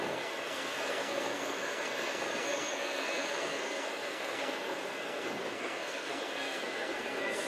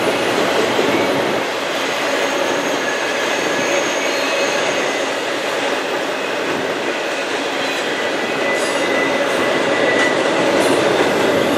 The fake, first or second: first